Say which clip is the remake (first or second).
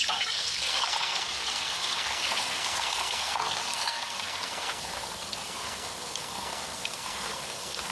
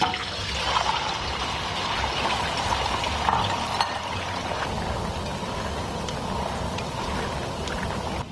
first